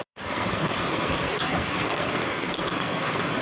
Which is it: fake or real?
fake